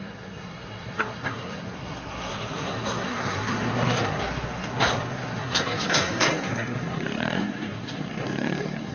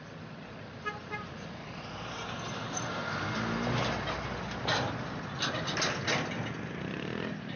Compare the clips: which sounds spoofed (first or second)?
first